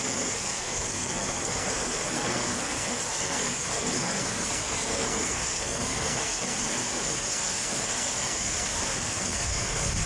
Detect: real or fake fake